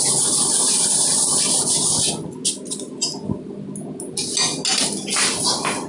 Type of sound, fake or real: real